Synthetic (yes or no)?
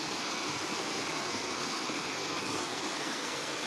yes